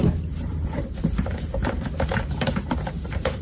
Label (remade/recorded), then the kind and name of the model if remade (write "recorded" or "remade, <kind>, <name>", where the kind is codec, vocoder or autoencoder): remade, vocoder, BigVGAN v2